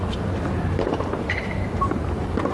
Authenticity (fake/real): fake